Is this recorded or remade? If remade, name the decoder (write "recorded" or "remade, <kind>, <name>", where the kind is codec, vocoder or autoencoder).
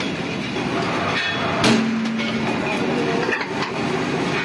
recorded